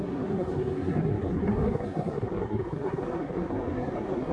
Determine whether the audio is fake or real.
fake